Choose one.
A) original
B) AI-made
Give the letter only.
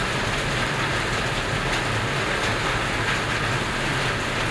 A